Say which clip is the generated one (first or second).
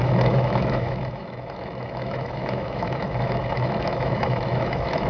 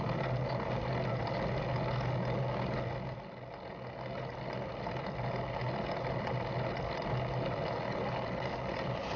first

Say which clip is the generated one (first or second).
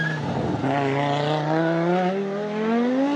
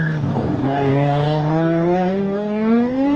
second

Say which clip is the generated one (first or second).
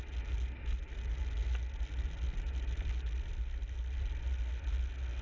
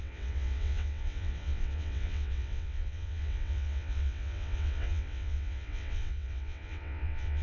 second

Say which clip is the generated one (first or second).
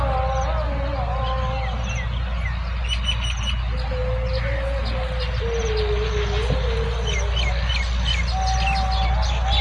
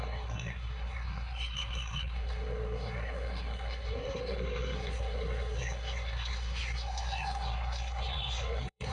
second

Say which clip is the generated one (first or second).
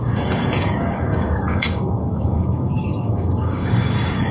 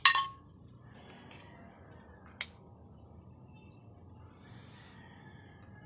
first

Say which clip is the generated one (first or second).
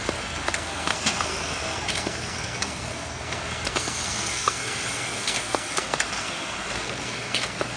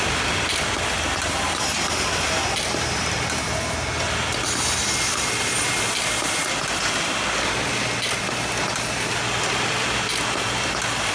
first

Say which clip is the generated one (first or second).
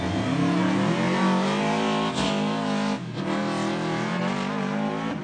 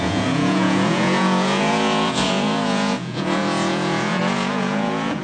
second